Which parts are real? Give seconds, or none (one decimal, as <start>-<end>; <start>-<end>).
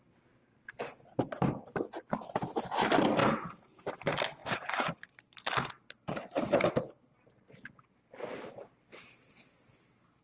0.0-3.2; 3.8-4.4; 6.7-10.2